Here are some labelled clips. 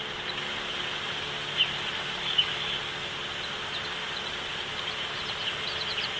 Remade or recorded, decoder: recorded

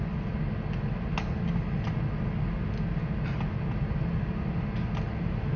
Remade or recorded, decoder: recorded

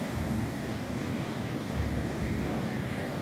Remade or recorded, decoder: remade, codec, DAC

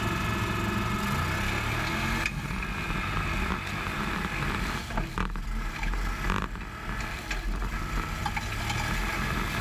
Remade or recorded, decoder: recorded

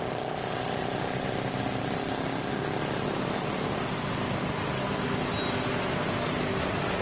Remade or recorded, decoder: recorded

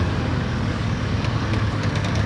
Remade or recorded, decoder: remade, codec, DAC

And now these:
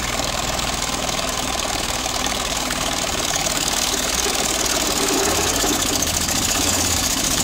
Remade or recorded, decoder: remade, codec, DAC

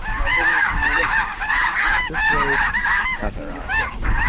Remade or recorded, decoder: remade, codec, DAC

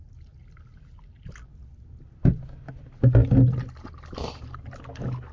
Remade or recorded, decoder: recorded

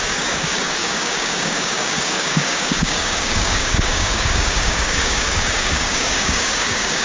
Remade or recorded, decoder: remade, codec, DAC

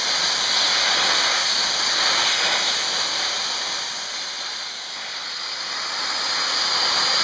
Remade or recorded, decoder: recorded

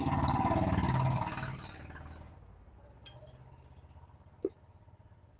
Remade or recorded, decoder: recorded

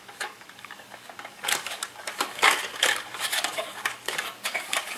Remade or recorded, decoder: remade, codec, DAC